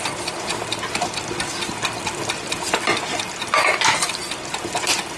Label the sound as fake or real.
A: real